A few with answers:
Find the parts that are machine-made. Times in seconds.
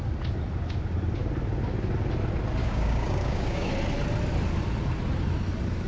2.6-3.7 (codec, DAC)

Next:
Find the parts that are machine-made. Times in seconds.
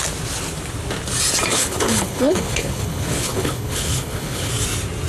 1.5-4.5 (codec, HILCodec)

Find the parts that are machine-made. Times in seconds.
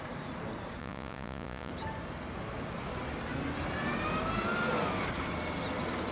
0.8-1.7 (vocoder, Vocos)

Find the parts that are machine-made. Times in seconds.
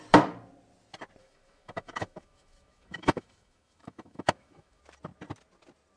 1.2-4.8 (autoencoder, DAC-VAE)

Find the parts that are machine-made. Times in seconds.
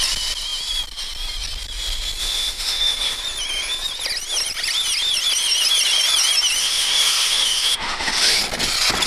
2.2-3.2 (autoencoder, DAC-VAE); 6.6-8.4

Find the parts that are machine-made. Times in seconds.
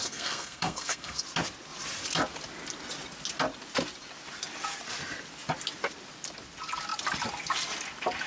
0.0-1.2 (codec, SNAC)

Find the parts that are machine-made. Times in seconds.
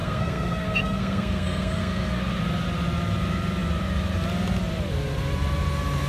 0.0-2.2 (codec, SNAC)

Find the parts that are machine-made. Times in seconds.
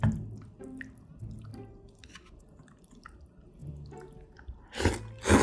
none